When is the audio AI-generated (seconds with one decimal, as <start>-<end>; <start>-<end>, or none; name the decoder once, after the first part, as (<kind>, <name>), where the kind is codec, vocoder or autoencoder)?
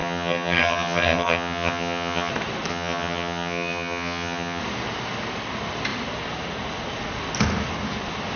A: 0.0-2.3 (vocoder, HiFi-GAN); 2.7-4.6